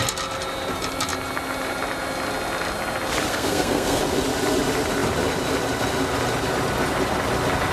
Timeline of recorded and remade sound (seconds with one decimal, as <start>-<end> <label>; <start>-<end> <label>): 0.0-3.3 recorded; 3.3-4.0 remade; 4.0-7.7 recorded